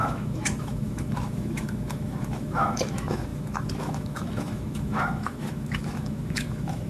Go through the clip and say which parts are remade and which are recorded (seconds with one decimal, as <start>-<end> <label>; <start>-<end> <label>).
0.0-6.9 remade